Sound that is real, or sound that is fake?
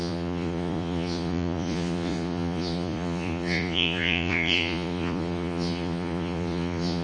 fake